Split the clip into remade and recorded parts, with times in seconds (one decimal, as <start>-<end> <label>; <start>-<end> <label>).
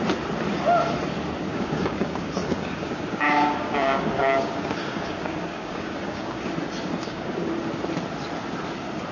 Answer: 0.0-1.5 recorded; 1.5-6.4 remade; 6.4-7.0 recorded; 7.0-7.5 remade; 7.5-9.1 recorded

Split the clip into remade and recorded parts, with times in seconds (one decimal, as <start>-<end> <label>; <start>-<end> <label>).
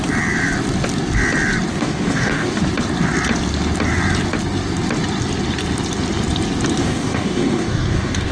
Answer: 0.0-1.7 recorded; 1.7-2.6 remade; 2.6-6.8 recorded; 6.8-8.3 remade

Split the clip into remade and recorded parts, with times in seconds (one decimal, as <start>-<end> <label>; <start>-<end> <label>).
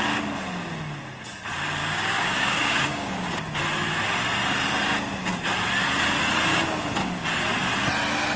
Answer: 0.0-1.8 recorded; 1.8-3.4 remade; 3.4-8.4 recorded